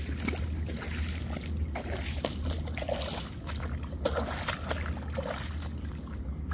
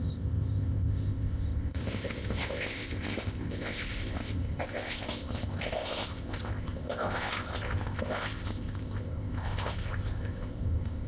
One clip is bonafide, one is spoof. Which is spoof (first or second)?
second